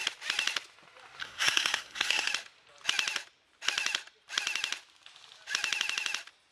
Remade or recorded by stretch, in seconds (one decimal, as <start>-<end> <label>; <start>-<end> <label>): 0.0-1.2 recorded; 1.2-2.3 remade; 2.3-6.5 recorded